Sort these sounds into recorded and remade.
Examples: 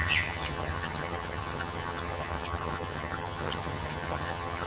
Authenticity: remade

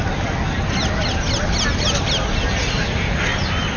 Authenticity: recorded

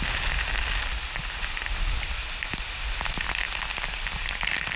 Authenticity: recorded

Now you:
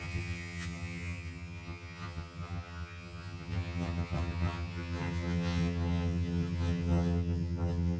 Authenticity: remade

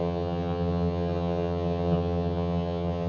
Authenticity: remade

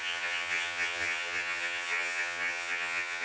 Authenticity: remade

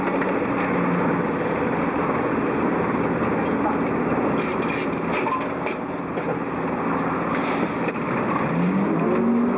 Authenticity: recorded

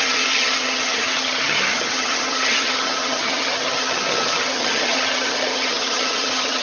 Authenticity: remade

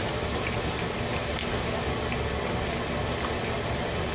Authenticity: recorded